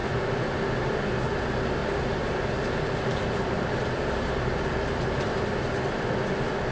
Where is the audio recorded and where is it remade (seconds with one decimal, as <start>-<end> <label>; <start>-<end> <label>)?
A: 0.0-1.8 recorded; 1.8-5.2 remade; 5.2-6.7 recorded

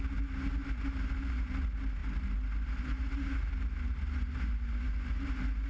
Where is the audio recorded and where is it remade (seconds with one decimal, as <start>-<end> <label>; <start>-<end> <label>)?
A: 0.0-5.7 recorded

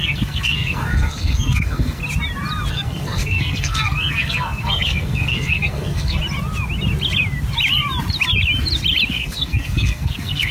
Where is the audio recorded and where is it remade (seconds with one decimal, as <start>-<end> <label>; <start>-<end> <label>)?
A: 0.0-2.0 remade; 2.0-2.7 recorded; 2.7-6.2 remade; 6.2-9.1 recorded; 9.1-10.5 remade